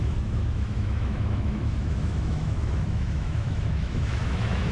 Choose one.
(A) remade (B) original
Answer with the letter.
A